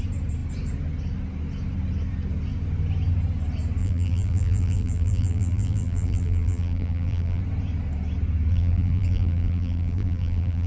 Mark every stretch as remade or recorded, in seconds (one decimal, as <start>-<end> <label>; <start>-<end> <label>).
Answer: 0.0-3.8 recorded; 3.8-7.4 remade; 7.4-8.5 recorded; 8.5-10.7 remade